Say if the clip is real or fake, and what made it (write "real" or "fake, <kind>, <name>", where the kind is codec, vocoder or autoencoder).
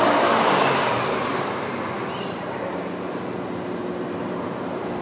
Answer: real